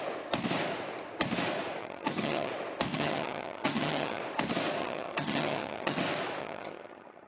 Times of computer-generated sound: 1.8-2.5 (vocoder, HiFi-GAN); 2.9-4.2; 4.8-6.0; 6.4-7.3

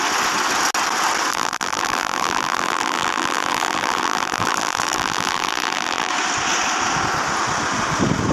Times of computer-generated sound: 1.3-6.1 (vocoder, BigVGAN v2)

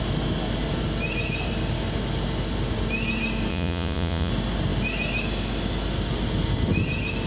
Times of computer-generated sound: 3.5-4.3 (vocoder, Vocos)

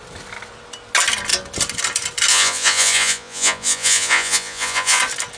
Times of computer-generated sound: 2.3-5.0 (vocoder, Vocos)